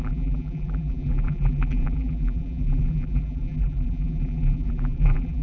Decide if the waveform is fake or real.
fake